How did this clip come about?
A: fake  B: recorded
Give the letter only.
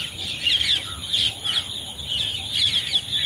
B